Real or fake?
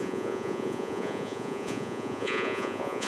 fake